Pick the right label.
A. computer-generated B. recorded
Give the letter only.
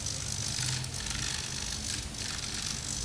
B